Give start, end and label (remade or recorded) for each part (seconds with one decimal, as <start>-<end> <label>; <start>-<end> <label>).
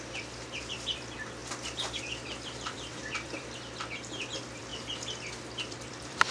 0.0-1.4 remade; 1.4-2.0 recorded; 2.0-4.7 remade; 4.7-5.6 recorded; 5.6-6.3 remade